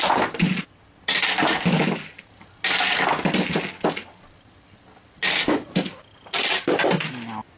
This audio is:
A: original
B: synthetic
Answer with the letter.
A